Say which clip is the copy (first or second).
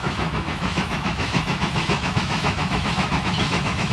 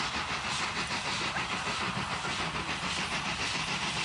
first